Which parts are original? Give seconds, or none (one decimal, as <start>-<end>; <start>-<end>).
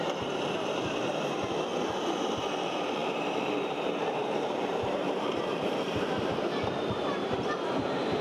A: 1.7-2.6